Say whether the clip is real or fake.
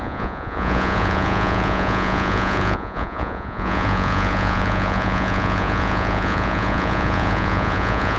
fake